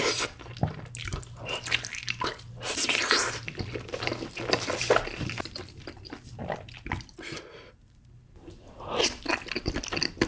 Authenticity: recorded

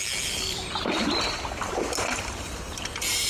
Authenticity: remade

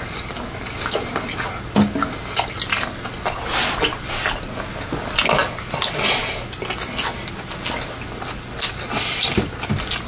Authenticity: recorded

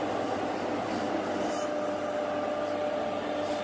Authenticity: recorded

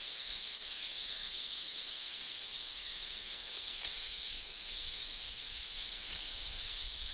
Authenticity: remade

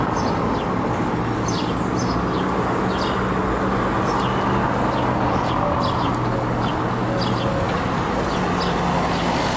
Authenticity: recorded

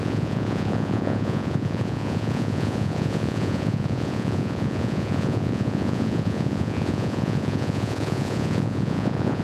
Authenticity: remade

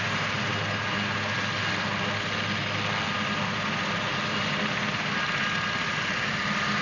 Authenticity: recorded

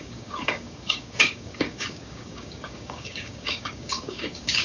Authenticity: remade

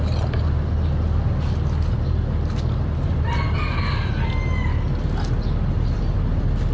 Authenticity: recorded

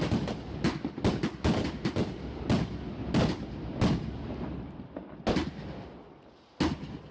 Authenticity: recorded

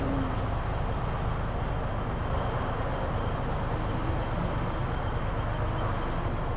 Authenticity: recorded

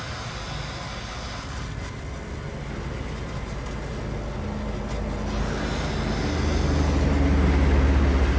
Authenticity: recorded